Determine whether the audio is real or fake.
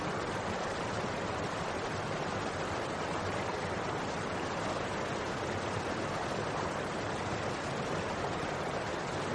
fake